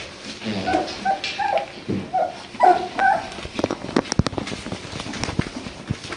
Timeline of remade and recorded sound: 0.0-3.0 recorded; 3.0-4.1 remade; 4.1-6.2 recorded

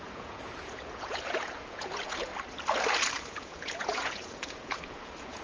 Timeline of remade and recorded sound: 0.0-2.3 remade; 2.3-3.1 recorded; 3.1-5.4 remade

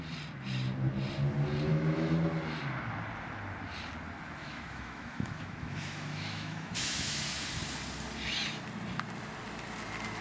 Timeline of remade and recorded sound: 0.0-1.7 recorded; 1.7-2.2 remade; 2.2-4.4 recorded; 4.4-7.3 remade; 7.3-10.2 recorded

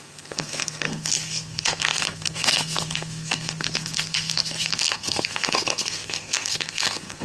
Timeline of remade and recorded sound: 0.0-7.2 remade